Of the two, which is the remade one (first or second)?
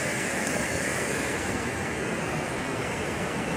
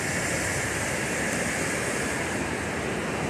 first